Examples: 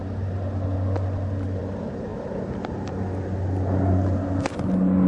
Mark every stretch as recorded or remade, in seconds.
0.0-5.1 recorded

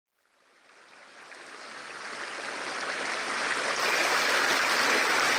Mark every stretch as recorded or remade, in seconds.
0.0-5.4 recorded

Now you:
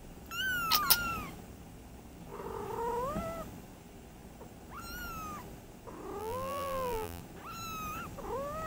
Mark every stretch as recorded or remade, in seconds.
0.0-6.2 recorded; 6.2-7.2 remade; 7.2-8.7 recorded